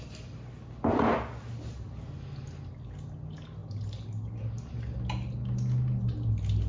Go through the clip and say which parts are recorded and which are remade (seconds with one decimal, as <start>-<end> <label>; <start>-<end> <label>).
0.0-6.7 recorded